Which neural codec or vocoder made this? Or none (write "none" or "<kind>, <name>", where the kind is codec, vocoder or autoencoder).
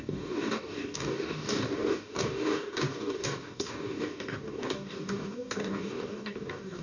codec, DAC